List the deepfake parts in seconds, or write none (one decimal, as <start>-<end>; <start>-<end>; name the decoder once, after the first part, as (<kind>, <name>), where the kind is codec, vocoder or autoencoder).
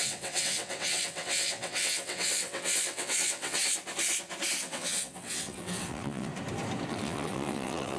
0.0-3.6 (vocoder, WaveNeXt); 4.6-6.3; 6.9-8.0